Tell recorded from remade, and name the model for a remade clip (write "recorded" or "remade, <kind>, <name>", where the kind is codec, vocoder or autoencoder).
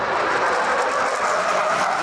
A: recorded